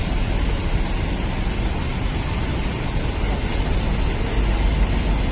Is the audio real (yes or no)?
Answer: yes